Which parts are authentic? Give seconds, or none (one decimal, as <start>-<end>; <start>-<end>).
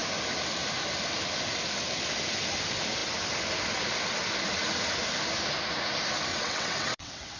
0.0-6.3